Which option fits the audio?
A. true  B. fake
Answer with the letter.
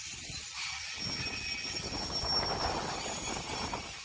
A